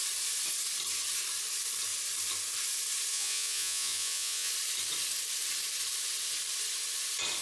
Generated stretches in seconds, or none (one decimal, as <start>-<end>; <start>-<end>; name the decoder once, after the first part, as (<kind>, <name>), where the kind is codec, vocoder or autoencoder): 3.1-4.5 (vocoder, Vocos)